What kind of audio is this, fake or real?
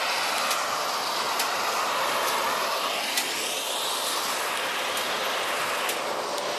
real